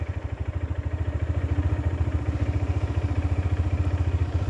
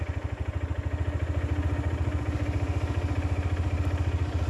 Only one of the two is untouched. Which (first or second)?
second